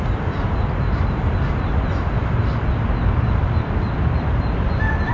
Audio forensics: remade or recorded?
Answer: recorded